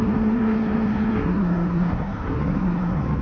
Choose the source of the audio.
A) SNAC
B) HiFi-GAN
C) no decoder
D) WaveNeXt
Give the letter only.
A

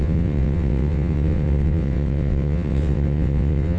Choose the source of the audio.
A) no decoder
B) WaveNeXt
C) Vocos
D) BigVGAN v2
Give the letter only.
B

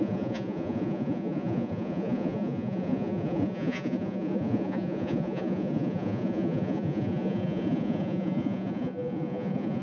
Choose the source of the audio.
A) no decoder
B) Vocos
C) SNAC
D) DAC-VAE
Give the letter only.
B